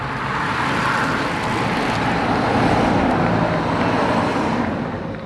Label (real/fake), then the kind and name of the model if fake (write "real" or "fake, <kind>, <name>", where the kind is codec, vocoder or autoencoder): real